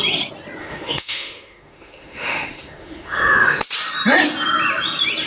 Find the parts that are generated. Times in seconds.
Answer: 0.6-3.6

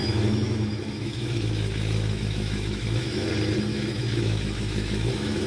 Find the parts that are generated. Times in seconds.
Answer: 0.0-3.3; 3.7-5.5